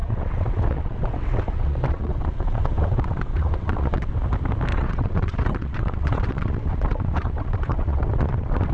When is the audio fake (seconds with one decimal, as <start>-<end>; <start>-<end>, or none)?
0.0-4.1; 4.7-8.7